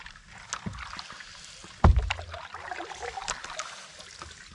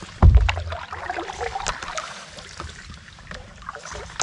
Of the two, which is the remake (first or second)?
second